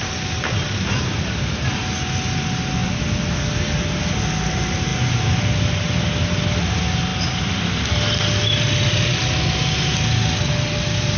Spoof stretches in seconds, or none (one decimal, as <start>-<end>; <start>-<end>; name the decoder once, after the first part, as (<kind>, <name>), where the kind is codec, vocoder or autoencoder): none